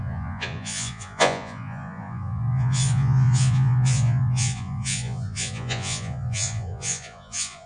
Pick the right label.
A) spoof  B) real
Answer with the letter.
A